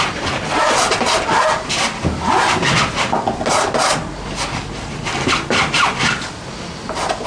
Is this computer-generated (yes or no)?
no